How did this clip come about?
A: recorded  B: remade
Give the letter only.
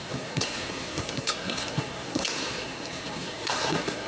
B